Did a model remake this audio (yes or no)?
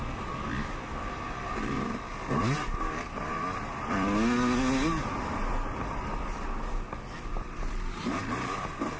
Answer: no